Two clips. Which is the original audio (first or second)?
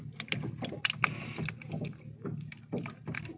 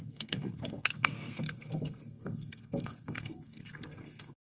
first